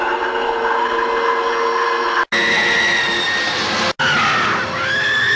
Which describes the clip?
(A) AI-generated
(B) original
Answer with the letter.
B